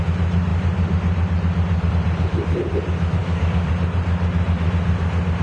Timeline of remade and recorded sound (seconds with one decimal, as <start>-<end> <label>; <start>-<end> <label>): 0.0-3.2 recorded; 3.2-3.7 remade; 3.7-5.4 recorded